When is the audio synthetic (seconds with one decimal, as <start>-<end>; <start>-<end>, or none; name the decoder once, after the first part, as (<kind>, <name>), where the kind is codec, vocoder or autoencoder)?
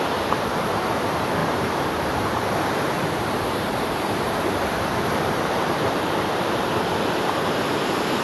0.0-8.2 (vocoder, BigVGAN v2)